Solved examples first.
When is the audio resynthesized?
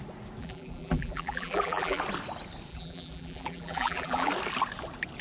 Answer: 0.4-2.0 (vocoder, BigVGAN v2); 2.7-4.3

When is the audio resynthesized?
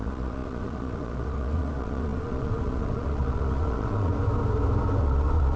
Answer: 0.0-4.1 (vocoder, Vocos); 5.0-5.6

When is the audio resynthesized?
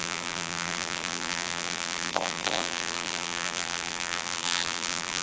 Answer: 0.0-5.2 (vocoder, BigVGAN v2)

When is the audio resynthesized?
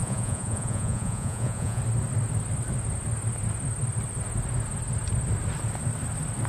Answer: 0.0-1.8 (vocoder, Vocos)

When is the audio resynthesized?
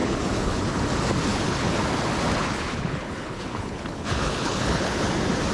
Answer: 0.0-0.8 (codec, HILCodec); 1.3-1.8; 2.4-5.1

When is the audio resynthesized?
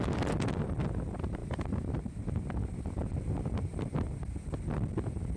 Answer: 0.0-5.4 (vocoder, BigVGAN v2)